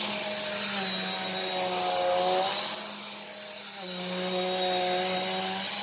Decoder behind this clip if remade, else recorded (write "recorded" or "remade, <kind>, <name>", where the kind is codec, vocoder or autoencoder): recorded